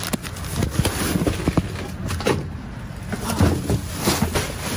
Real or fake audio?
real